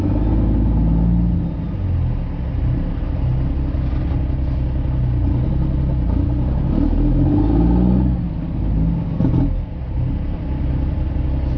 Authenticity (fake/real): real